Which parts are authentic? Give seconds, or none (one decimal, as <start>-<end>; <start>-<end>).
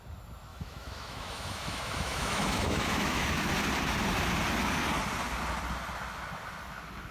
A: 0.0-0.5; 3.5-7.1